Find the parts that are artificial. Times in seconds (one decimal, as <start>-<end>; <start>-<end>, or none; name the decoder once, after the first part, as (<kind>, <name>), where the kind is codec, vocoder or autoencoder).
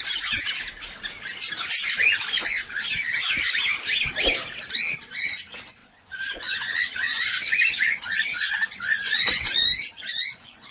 5.8-10.7 (vocoder, Vocos)